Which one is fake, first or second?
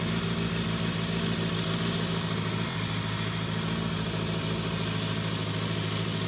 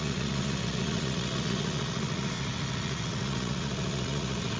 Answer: second